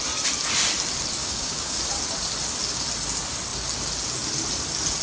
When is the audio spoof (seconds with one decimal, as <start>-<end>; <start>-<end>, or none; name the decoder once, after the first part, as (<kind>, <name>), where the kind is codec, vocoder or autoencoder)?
1.2-1.8 (codec, DAC)

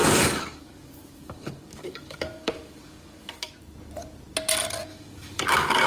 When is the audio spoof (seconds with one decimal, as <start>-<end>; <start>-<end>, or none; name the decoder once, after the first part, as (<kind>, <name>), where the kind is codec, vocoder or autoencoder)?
0.0-3.5 (codec, DAC); 4.9-5.9

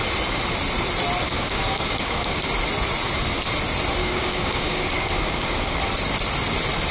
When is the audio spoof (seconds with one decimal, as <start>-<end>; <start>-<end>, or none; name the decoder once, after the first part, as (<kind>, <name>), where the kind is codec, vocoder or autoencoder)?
1.2-2.4 (codec, DAC); 4.0-5.8

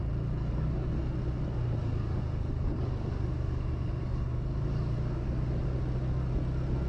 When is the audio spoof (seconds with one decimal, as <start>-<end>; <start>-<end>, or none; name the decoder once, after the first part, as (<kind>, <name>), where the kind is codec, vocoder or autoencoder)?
0.4-0.9 (codec, DAC); 1.8-5.6

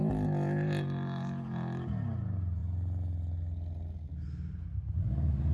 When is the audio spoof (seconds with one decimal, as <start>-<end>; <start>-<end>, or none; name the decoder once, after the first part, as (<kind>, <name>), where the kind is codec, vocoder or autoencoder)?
none

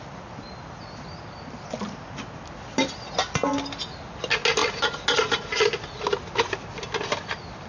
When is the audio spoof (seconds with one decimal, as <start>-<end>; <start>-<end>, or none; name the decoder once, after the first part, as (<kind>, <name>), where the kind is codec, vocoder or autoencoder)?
none